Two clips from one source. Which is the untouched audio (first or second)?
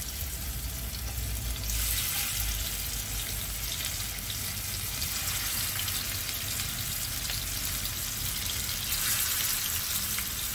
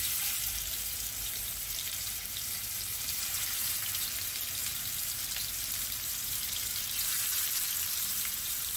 first